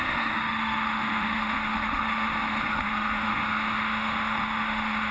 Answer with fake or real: fake